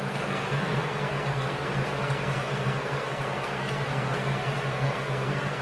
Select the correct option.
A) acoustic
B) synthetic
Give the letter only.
B